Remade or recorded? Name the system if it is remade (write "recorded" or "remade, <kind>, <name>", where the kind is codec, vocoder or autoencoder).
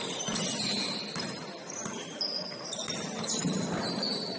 recorded